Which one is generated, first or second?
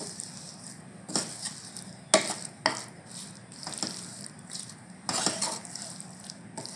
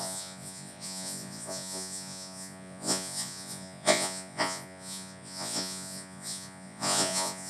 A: second